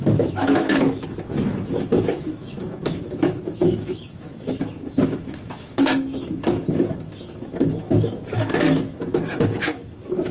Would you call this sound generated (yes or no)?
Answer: yes